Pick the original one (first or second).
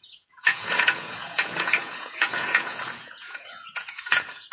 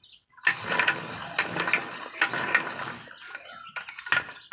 second